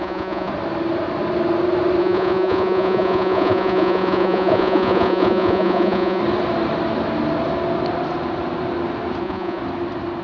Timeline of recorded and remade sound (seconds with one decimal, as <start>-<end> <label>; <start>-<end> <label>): 0.0-0.5 remade; 0.5-2.0 recorded; 2.0-6.2 remade; 6.2-9.2 recorded; 9.2-9.6 remade; 9.6-10.2 recorded